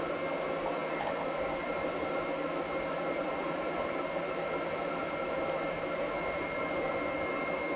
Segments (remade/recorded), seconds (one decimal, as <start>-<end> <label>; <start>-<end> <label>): 0.0-0.8 recorded; 0.8-4.0 remade; 4.0-7.8 recorded